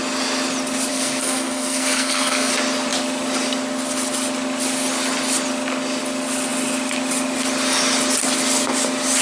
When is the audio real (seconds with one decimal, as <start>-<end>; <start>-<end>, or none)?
0.0-0.9; 2.5-9.2